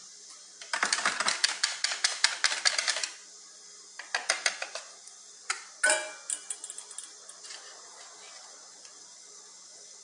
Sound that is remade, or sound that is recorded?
recorded